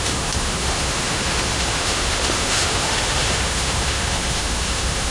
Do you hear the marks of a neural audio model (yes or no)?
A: yes